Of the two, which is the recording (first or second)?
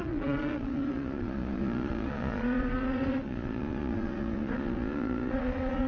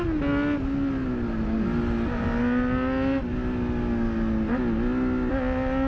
second